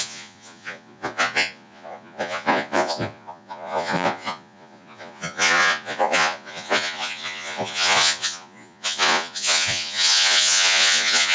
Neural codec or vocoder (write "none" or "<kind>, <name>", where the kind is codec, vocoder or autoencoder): vocoder, Vocos